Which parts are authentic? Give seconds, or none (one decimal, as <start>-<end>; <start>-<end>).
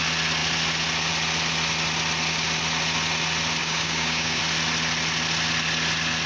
0.0-3.6; 4.4-6.3